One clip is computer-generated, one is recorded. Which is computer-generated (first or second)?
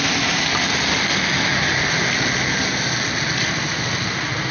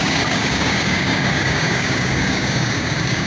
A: second